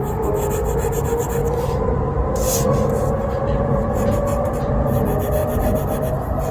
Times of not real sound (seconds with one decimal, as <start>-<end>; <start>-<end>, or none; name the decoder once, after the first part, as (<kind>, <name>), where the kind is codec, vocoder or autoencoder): none